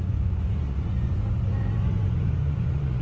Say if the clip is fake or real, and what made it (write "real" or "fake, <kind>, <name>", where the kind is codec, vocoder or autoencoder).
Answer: fake, vocoder, Vocos